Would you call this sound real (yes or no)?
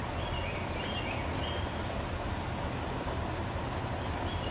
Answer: yes